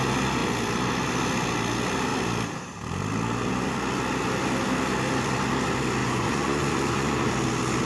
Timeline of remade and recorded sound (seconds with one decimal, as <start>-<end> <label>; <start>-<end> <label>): 0.0-6.0 recorded; 6.0-7.3 remade; 7.3-7.9 recorded